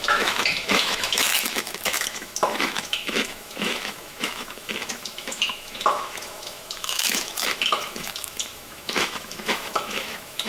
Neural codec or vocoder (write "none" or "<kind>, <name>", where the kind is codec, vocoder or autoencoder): autoencoder, DAC-VAE